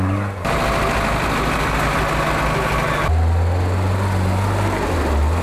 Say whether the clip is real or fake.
real